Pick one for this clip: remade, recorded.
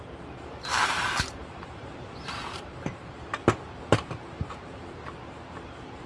remade